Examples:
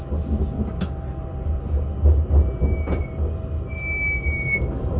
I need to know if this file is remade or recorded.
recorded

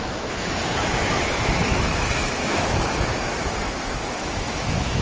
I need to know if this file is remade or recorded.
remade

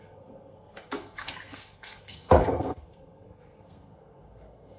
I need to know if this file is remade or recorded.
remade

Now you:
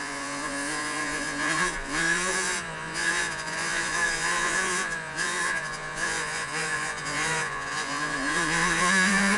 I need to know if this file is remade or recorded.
remade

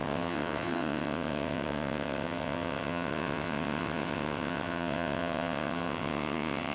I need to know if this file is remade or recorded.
remade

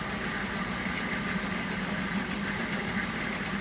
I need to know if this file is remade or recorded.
recorded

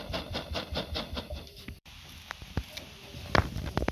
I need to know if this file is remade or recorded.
remade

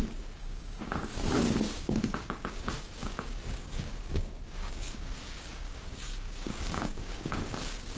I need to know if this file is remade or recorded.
remade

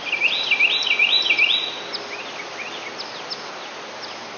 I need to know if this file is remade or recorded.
recorded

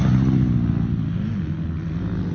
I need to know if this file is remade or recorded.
recorded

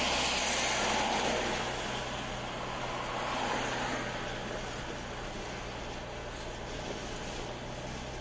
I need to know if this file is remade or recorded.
recorded